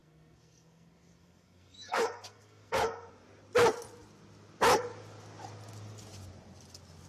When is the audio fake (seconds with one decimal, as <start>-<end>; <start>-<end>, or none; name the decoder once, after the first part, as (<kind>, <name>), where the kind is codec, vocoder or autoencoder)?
0.0-3.1 (codec, SNAC)